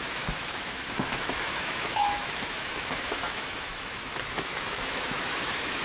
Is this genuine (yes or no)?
no